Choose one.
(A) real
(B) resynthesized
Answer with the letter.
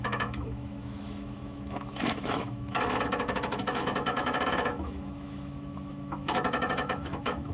B